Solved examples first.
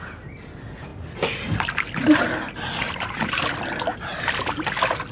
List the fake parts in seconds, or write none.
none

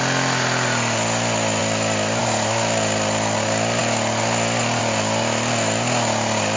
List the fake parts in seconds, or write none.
none

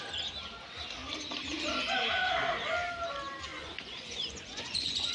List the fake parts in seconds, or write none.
3.5-5.1 (vocoder, Vocos)

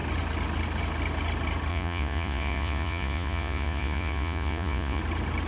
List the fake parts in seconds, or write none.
1.7-5.0 (vocoder, Vocos)